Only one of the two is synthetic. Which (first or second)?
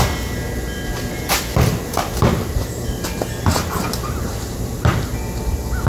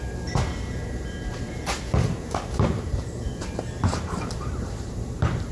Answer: second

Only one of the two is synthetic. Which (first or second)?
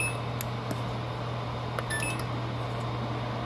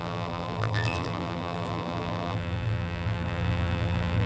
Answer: second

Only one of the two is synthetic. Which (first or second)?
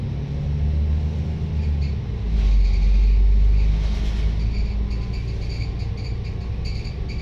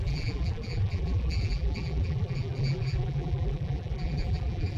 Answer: second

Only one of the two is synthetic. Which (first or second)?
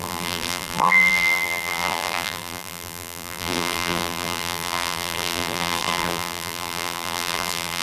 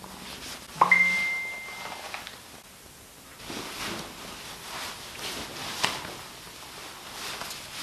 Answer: first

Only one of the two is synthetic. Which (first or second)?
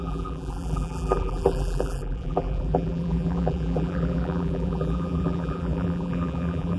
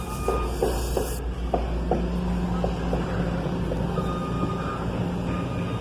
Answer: first